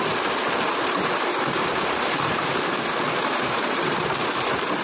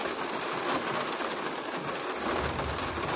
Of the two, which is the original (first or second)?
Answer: second